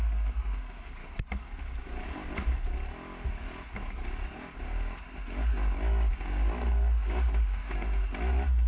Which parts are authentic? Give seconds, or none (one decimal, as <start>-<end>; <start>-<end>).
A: 1.0-6.1; 7.6-8.7